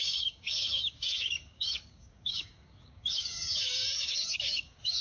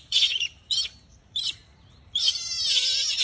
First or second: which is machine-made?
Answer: first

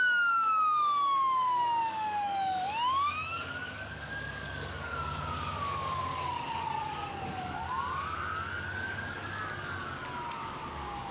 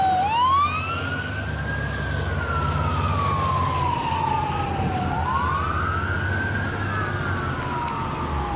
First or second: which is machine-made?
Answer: first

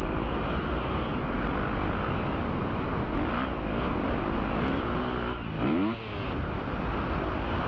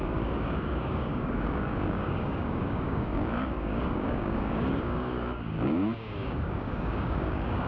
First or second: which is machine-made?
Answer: second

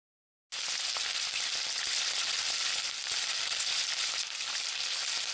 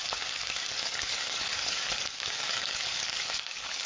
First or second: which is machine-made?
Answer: second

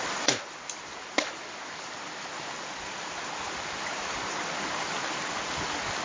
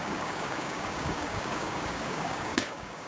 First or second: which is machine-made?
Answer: second